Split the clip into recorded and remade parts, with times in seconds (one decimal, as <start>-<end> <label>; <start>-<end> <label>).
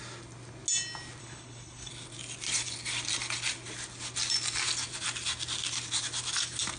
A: 0.0-1.2 recorded; 1.2-1.9 remade; 1.9-6.8 recorded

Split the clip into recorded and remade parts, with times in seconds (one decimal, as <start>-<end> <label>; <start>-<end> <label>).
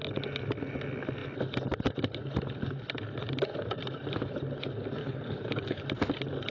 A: 0.0-5.0 recorded; 5.0-5.8 remade; 5.8-6.5 recorded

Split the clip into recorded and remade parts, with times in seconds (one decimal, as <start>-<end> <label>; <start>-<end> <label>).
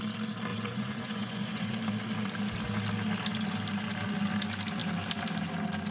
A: 0.0-0.5 recorded; 0.5-1.8 remade; 1.8-5.9 recorded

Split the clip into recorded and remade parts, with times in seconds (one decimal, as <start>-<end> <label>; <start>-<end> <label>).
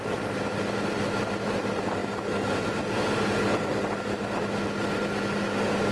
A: 0.0-5.9 recorded